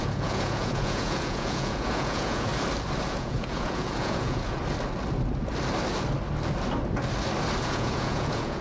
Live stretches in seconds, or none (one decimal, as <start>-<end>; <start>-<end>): 2.5-3.1; 4.6-7.6